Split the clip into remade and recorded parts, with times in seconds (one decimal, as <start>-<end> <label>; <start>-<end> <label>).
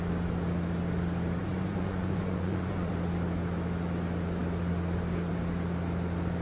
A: 0.0-1.4 recorded; 1.4-2.9 remade; 2.9-6.4 recorded